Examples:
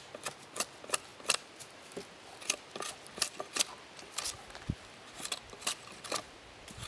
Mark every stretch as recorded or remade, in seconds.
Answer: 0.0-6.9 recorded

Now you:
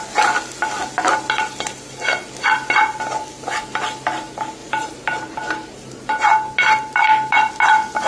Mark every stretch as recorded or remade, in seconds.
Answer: 0.0-4.6 recorded; 4.6-6.1 remade; 6.1-8.1 recorded

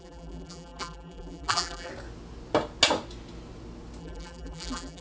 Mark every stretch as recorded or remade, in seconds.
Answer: 0.0-1.9 remade; 1.9-4.0 recorded; 4.0-5.0 remade